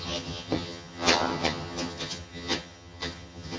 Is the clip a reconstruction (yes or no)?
yes